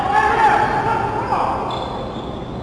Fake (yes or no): no